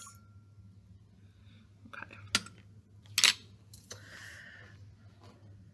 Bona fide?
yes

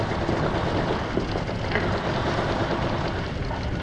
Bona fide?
yes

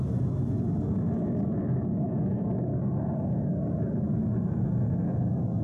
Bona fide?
yes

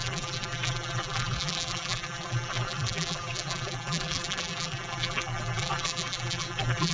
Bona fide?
no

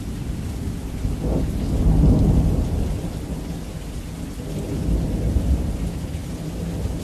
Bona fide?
yes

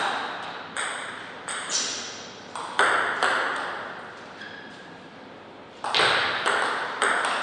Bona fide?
yes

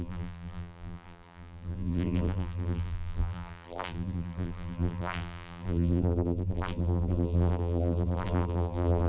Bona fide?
no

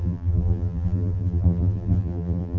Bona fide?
no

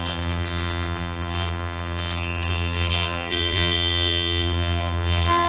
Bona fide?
no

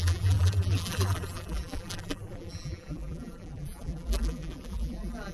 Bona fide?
no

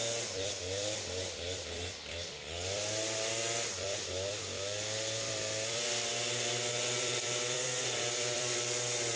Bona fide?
no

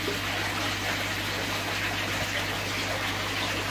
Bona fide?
yes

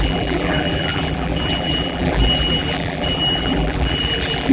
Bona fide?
no